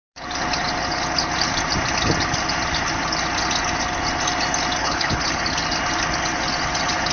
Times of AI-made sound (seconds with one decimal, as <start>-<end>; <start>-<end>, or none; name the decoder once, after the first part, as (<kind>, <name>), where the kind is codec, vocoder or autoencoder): 4.8-5.4 (codec, HILCodec)